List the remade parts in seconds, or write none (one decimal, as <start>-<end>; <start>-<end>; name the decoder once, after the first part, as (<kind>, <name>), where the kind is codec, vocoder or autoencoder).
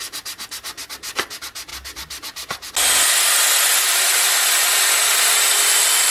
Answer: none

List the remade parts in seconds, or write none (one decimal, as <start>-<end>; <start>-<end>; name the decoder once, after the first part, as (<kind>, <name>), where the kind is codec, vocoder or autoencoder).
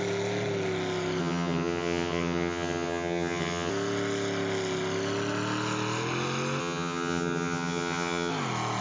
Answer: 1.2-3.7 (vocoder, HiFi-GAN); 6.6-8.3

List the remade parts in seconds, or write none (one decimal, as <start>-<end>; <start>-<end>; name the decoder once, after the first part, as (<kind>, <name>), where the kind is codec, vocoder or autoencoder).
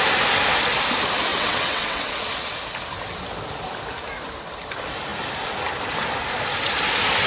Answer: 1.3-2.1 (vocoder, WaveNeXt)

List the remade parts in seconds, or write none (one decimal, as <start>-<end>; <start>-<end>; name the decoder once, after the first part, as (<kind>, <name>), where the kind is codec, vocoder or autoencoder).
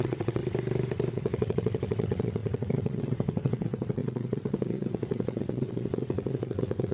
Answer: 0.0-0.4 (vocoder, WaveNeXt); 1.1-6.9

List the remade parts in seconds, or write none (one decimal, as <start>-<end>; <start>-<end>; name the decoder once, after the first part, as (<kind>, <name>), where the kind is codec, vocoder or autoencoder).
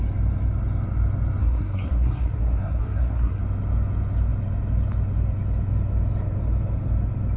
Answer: 1.4-3.4 (codec, SNAC)